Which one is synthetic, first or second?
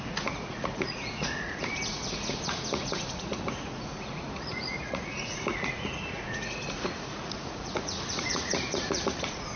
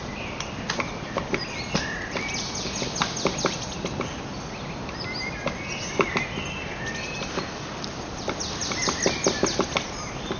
first